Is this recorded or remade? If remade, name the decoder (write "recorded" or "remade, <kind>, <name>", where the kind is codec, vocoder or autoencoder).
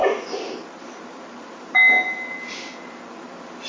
recorded